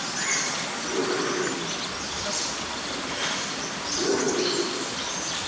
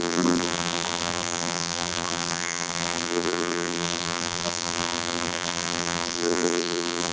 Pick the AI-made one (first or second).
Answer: second